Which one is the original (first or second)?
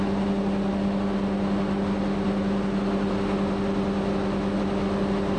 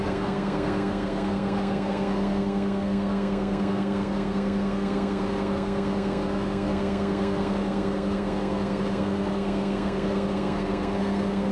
first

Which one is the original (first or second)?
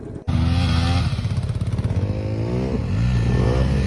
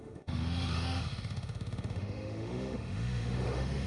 first